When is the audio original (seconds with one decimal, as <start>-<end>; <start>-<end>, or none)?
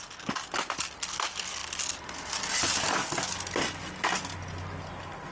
0.0-5.3